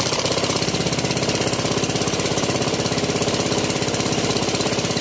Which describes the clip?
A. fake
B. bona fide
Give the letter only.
A